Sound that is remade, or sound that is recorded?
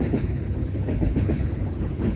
remade